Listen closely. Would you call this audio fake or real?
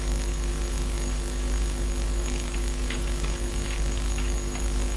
fake